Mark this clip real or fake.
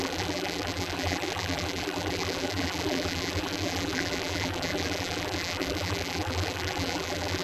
fake